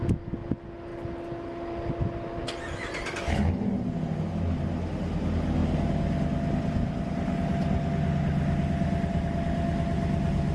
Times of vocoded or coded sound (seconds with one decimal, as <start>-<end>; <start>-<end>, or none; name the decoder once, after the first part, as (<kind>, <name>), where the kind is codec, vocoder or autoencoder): none